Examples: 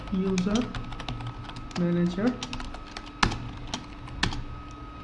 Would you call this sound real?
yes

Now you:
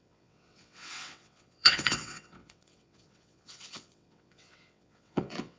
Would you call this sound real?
no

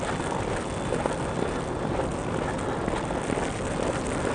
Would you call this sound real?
yes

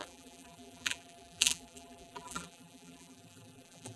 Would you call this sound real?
no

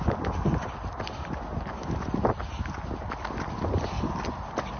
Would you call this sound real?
yes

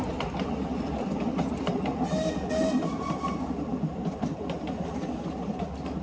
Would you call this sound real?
yes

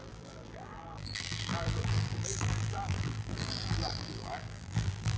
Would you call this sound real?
no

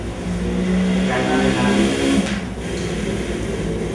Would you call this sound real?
yes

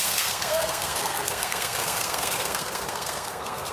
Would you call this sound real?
no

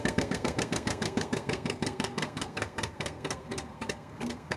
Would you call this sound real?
no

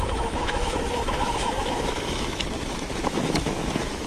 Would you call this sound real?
no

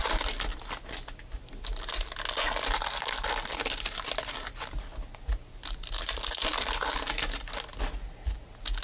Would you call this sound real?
yes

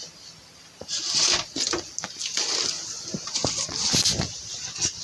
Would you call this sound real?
yes